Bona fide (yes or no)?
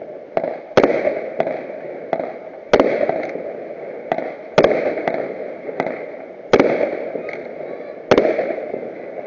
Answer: yes